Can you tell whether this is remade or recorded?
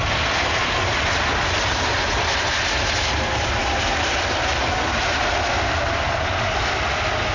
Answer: recorded